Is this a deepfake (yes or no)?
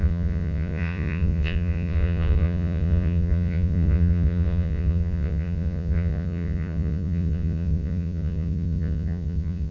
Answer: yes